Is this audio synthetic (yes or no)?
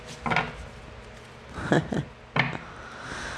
no